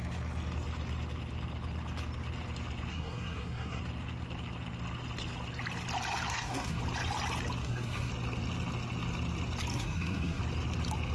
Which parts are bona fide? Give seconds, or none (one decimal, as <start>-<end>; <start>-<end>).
0.0-2.9; 3.8-6.3; 6.8-7.6; 8.1-9.7; 10.4-11.1